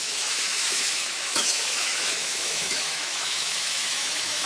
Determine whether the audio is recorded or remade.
remade